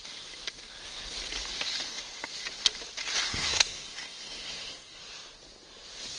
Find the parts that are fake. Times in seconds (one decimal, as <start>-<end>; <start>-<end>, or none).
3.3-5.0